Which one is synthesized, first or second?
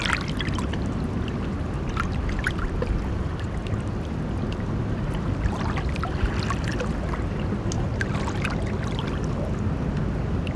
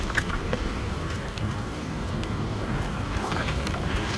second